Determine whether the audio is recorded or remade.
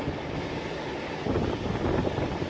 recorded